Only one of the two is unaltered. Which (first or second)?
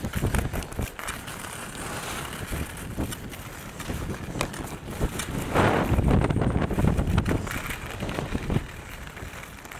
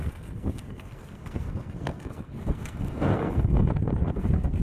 first